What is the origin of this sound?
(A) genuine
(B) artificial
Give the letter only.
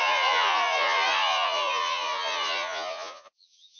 B